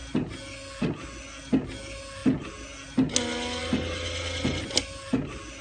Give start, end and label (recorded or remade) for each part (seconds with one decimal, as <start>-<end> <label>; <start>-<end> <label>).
0.0-5.6 recorded